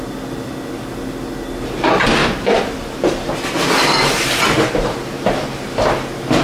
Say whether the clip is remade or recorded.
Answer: recorded